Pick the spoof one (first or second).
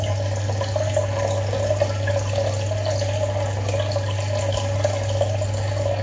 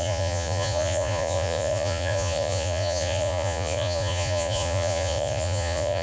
second